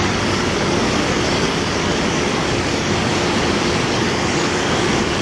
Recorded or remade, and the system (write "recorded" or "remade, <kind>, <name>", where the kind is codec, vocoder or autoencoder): remade, codec, DAC